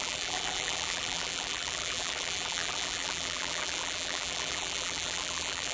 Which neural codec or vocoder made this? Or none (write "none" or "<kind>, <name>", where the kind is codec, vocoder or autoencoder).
vocoder, BigVGAN v2